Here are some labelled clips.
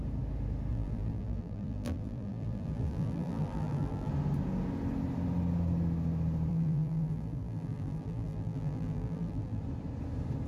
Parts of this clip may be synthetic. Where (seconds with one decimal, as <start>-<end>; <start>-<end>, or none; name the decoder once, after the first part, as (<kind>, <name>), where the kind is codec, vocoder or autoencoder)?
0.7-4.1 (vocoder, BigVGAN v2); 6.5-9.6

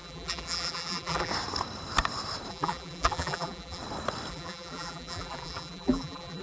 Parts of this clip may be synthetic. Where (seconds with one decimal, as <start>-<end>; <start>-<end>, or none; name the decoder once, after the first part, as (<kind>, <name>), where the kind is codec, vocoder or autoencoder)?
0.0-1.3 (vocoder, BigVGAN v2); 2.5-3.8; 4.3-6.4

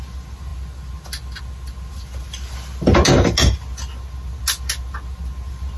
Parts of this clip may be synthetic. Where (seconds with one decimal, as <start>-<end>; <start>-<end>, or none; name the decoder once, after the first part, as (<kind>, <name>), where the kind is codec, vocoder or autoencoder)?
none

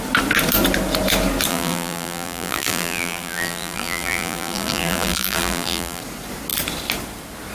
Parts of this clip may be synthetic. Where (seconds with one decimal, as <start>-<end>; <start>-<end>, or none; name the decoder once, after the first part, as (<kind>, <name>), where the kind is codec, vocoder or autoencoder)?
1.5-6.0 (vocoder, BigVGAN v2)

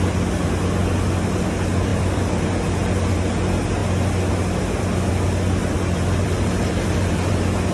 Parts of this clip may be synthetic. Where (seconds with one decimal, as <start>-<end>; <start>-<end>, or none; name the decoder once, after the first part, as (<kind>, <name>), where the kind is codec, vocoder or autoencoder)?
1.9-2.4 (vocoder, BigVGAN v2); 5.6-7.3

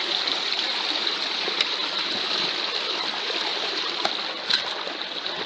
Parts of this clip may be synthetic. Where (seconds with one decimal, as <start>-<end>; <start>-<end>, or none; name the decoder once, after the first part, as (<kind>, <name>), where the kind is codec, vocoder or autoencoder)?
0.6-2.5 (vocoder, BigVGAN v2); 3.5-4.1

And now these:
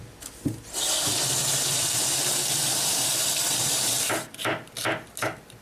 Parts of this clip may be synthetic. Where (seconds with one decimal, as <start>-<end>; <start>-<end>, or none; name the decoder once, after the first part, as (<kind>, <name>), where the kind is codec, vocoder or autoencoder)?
1.4-3.9 (vocoder, BigVGAN v2)

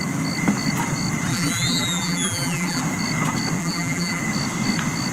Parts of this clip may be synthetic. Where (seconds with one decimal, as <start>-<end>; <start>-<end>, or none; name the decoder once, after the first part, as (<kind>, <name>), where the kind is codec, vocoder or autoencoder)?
1.3-2.8 (vocoder, BigVGAN v2); 3.6-4.2